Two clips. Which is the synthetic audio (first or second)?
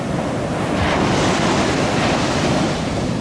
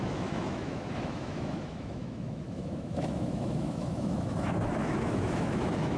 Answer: second